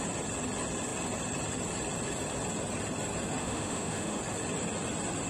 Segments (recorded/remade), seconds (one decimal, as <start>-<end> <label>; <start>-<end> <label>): 0.0-3.4 recorded; 3.4-4.2 remade; 4.2-5.3 recorded